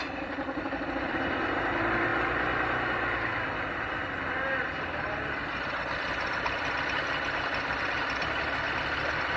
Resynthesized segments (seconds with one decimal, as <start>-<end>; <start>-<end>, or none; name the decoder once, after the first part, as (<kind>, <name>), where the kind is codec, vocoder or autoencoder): none